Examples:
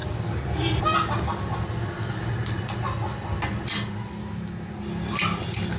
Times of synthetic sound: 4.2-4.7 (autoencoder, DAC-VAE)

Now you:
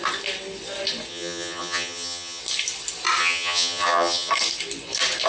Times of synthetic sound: 1.1-2.4 (vocoder, HiFi-GAN); 3.2-4.3

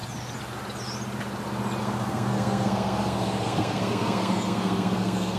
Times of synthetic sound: 1.8-5.4 (codec, SNAC)

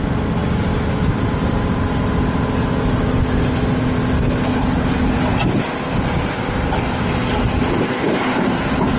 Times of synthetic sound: none

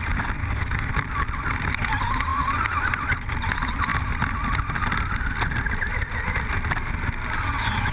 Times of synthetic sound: 0.4-0.9 (codec, DAC)